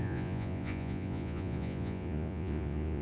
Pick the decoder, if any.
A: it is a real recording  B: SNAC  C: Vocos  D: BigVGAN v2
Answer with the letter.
C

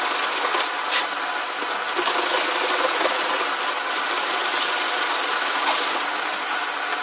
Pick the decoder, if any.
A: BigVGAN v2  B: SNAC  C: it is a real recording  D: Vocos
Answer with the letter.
C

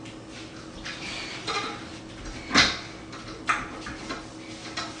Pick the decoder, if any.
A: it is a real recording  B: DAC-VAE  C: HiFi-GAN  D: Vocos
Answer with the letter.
A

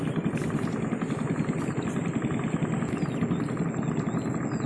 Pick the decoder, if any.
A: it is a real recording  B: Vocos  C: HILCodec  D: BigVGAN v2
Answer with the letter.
A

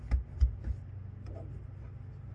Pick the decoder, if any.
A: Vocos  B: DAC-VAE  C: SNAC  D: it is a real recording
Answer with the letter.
D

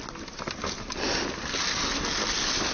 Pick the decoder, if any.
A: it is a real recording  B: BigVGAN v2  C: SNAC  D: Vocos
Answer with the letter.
A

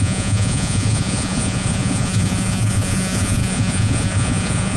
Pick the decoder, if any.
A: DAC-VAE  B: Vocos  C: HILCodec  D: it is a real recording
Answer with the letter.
B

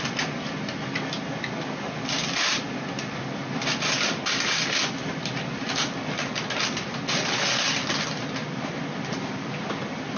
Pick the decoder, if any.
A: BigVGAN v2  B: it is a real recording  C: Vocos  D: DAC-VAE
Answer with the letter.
B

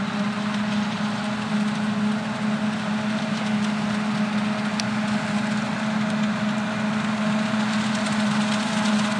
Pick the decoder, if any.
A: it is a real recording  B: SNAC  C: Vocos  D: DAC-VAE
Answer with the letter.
A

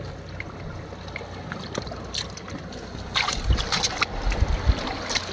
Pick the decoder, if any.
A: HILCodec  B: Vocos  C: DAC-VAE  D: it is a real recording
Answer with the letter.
D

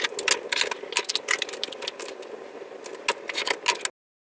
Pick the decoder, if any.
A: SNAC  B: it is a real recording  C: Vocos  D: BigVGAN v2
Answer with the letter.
B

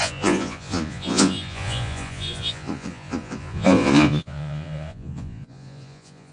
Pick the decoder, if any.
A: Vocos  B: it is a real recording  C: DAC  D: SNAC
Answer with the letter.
A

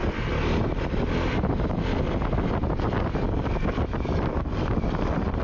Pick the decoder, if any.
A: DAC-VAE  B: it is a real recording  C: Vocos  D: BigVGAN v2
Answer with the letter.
B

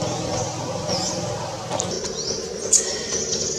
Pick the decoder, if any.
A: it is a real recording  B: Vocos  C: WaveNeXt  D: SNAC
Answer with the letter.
A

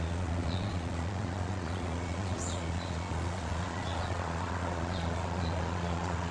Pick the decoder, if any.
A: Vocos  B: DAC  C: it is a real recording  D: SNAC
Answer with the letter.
A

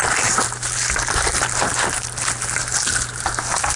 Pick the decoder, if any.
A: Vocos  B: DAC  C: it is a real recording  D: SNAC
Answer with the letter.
C